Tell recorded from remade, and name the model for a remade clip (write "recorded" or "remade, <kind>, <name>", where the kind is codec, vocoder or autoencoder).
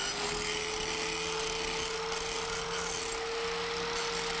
recorded